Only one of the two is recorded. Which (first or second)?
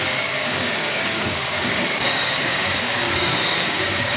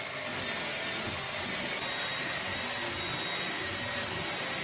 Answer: second